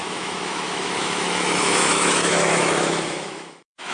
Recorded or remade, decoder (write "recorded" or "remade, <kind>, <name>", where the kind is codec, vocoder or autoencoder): remade, autoencoder, DAC-VAE